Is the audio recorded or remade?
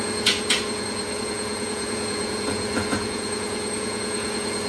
remade